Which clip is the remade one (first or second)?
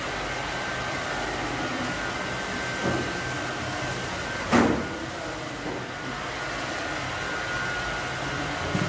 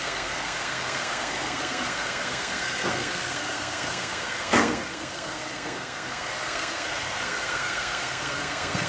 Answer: second